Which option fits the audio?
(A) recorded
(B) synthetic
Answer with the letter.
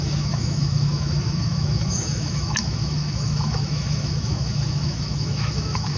B